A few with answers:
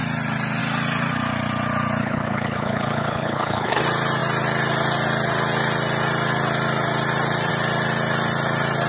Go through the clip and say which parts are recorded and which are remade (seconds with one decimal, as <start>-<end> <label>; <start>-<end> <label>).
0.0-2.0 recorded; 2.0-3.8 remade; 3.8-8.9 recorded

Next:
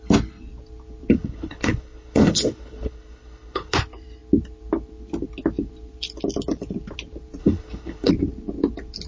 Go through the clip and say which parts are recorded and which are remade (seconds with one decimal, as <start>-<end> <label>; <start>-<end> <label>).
0.0-1.1 recorded; 1.1-3.7 remade; 3.7-7.4 recorded; 7.4-8.1 remade; 8.1-9.1 recorded

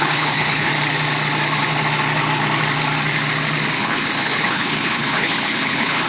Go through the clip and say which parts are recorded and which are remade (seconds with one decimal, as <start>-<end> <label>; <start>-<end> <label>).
0.0-0.7 remade; 0.7-3.8 recorded; 3.8-6.1 remade

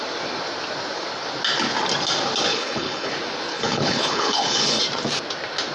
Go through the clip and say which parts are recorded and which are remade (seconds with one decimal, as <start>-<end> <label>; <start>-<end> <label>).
0.0-2.5 recorded; 2.5-3.1 remade; 3.1-3.5 recorded; 3.5-4.8 remade; 4.8-5.7 recorded

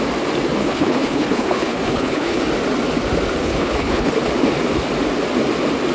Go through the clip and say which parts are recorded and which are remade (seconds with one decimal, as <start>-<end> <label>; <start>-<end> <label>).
0.0-0.6 recorded; 0.6-2.4 remade; 2.4-3.4 recorded; 3.4-4.1 remade; 4.1-5.9 recorded

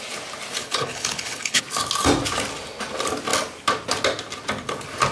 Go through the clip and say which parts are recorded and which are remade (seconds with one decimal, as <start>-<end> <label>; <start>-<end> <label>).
0.0-0.6 recorded; 0.6-1.6 remade; 1.6-5.1 recorded